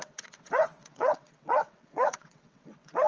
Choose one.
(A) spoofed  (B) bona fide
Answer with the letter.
A